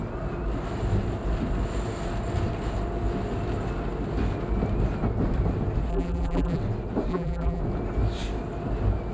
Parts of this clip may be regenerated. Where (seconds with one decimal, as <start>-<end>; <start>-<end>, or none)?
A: 5.9-6.6; 7.1-7.6